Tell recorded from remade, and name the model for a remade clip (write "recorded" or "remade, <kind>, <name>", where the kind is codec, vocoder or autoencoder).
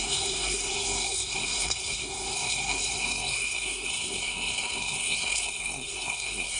remade, codec, SNAC